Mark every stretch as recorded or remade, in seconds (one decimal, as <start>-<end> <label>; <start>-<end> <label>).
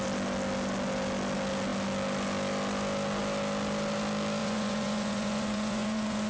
0.0-4.4 recorded; 4.4-6.3 remade